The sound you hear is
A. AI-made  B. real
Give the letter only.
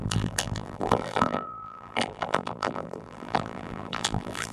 A